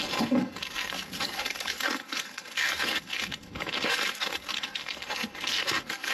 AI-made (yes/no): yes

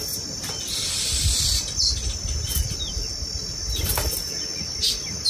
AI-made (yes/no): no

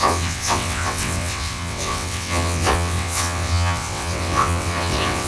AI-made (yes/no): yes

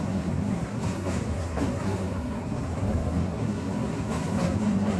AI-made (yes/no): yes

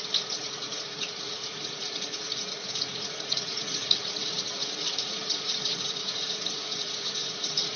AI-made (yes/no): yes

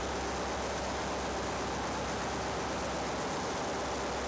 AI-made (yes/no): no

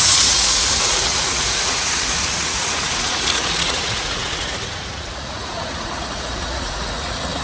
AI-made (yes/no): yes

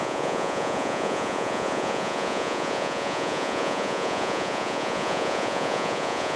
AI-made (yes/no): yes